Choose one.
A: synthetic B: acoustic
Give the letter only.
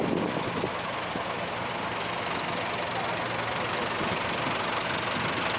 B